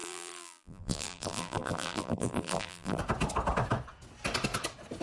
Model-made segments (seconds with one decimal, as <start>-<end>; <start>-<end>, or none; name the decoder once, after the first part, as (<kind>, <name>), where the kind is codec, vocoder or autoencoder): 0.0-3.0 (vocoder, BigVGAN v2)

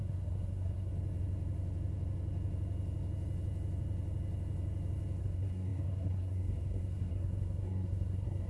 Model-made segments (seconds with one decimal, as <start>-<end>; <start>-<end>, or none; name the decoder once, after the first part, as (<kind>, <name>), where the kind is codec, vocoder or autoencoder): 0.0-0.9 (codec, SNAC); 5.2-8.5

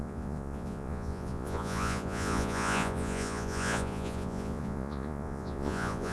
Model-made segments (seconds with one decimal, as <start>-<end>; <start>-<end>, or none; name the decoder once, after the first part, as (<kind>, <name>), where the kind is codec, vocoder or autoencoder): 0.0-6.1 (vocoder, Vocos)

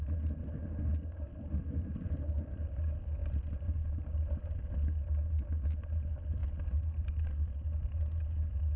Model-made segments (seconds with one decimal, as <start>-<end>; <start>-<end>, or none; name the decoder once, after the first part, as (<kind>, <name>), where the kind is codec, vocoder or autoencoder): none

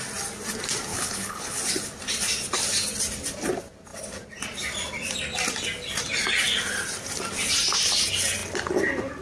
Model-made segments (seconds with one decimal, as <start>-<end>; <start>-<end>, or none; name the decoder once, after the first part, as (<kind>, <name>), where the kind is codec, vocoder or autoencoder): 0.9-1.6 (codec, HILCodec)

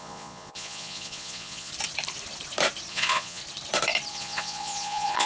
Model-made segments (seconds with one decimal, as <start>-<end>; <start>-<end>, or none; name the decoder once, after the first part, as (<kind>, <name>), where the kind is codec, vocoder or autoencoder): 0.0-1.7 (vocoder, Vocos); 2.9-3.4; 4.1-5.3

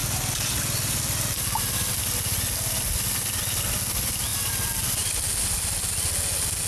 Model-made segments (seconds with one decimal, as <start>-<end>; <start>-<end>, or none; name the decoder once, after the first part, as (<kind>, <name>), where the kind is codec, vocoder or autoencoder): none